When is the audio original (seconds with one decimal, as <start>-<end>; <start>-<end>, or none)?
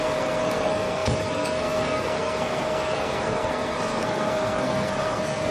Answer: none